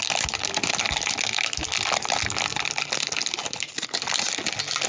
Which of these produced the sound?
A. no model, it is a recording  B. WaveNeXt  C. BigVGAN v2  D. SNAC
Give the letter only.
A